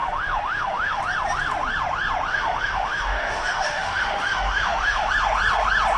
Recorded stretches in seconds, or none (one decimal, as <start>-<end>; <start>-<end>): 1.0-2.3; 5.1-6.0